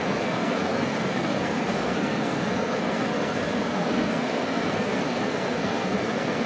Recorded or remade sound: remade